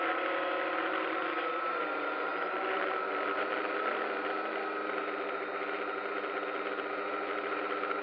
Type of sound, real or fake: real